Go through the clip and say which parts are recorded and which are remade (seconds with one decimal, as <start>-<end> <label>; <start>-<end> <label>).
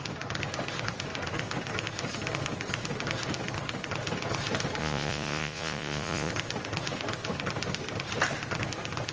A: 0.0-4.8 recorded; 4.8-6.3 remade; 6.3-9.1 recorded